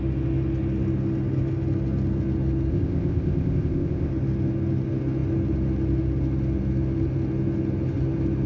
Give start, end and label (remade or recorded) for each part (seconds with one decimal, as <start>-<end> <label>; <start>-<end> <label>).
0.0-2.7 recorded; 2.7-4.1 remade; 4.1-8.5 recorded